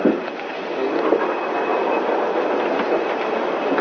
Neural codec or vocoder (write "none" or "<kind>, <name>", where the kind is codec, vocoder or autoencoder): none